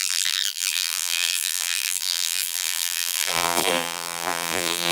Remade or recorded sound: remade